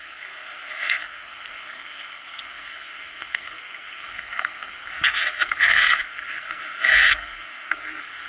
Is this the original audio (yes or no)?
no